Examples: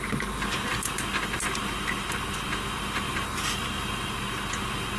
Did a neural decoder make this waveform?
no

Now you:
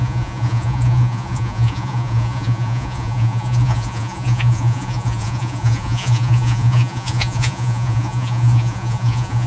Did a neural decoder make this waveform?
yes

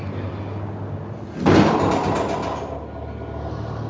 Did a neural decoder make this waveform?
no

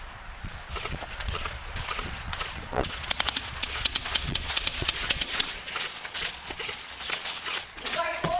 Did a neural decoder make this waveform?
yes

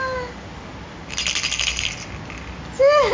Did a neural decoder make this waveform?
no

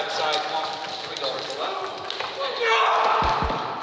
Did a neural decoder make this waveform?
no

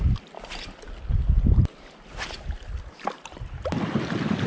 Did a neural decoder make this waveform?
no